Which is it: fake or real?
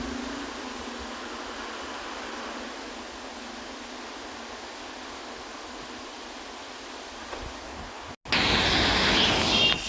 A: real